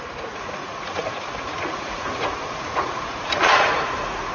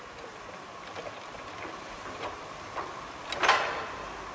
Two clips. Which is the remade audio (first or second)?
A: first